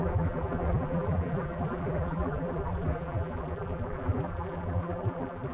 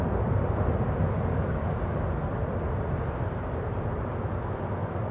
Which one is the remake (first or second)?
first